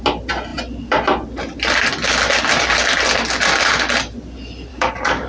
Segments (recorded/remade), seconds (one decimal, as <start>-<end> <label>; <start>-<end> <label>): 0.0-4.7 recorded; 4.7-5.3 remade